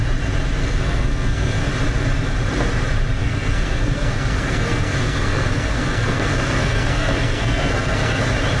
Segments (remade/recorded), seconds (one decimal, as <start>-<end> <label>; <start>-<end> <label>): 0.0-0.6 recorded; 0.6-1.7 remade; 1.7-3.2 recorded; 3.2-8.2 remade; 8.2-8.6 recorded